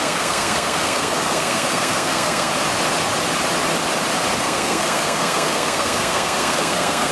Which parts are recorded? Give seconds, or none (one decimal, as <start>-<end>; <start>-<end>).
2.5-4.4